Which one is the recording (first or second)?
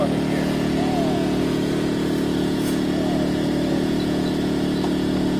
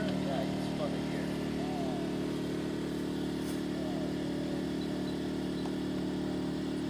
second